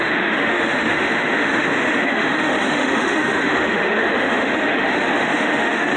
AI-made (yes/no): yes